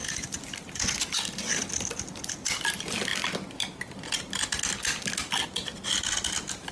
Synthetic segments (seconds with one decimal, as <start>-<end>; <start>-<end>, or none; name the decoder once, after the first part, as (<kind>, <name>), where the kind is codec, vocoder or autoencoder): none